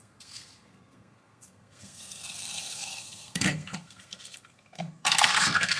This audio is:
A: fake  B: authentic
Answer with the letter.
A